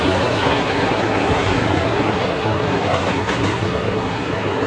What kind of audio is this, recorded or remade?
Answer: remade